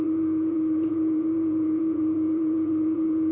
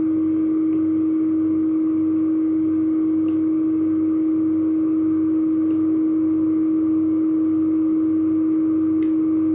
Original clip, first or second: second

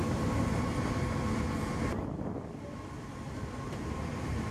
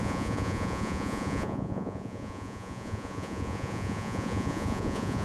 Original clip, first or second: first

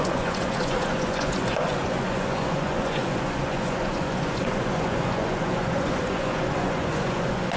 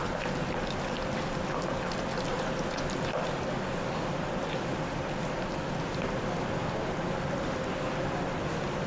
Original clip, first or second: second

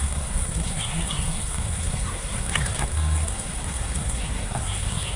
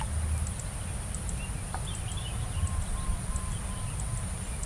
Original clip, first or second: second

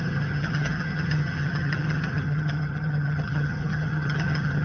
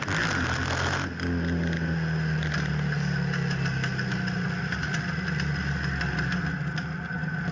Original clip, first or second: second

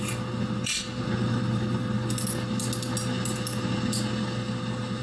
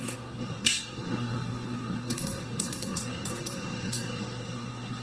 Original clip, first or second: first